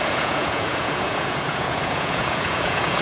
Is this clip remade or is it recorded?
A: remade